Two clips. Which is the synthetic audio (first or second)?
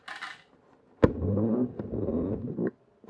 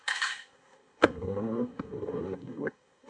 second